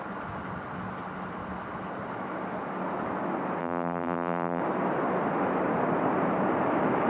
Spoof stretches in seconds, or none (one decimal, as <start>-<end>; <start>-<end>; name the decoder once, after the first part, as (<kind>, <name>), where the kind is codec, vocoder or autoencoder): 3.6-4.6 (vocoder, BigVGAN v2)